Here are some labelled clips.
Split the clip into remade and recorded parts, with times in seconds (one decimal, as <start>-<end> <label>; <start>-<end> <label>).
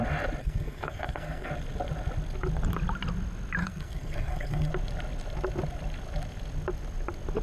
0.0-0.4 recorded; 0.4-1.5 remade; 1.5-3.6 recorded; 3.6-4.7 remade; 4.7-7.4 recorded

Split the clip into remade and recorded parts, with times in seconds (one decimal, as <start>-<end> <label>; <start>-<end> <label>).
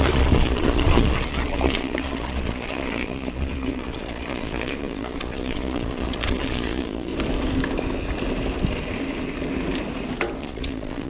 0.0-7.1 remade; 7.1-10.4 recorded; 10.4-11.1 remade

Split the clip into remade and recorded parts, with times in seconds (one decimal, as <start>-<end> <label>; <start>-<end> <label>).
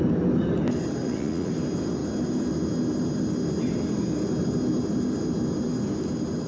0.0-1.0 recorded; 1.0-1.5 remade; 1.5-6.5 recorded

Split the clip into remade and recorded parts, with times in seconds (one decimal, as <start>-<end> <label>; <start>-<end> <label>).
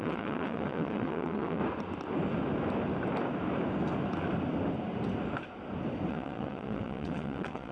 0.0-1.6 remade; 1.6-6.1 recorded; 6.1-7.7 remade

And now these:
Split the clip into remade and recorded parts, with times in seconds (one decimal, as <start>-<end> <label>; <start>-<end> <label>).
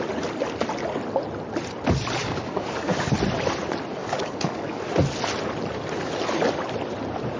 0.0-2.2 recorded; 2.2-3.1 remade; 3.1-4.0 recorded; 4.0-4.8 remade; 4.8-7.4 recorded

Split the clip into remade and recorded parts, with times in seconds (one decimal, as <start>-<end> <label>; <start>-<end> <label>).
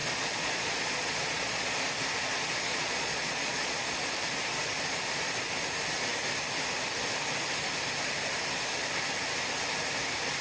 0.0-1.8 remade; 1.8-2.7 recorded; 2.7-4.2 remade; 4.2-10.4 recorded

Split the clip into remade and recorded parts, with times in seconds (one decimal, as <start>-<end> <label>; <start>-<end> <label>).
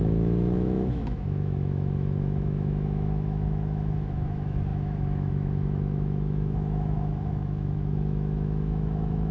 0.0-9.3 remade